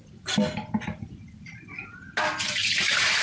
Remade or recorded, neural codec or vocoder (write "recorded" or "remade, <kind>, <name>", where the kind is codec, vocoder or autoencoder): recorded